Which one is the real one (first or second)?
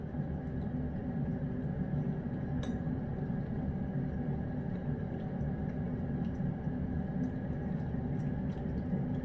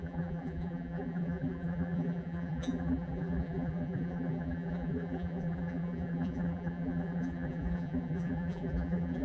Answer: first